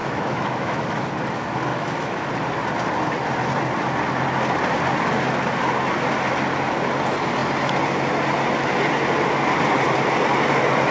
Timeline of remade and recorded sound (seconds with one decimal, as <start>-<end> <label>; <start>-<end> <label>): 0.0-1.1 remade; 1.1-1.7 recorded; 1.7-2.3 remade; 2.3-10.9 recorded